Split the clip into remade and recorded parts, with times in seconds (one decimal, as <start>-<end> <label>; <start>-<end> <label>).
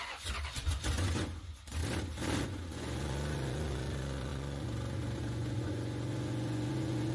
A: 0.0-1.8 remade; 1.8-2.4 recorded; 2.4-7.1 remade